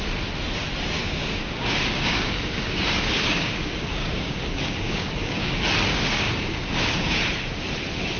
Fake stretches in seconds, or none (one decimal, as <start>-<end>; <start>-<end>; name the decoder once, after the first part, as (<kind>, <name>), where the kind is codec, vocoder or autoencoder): 1.0-5.5 (codec, DAC); 5.9-7.2